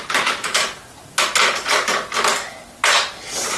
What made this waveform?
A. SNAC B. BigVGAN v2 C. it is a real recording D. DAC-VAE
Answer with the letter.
C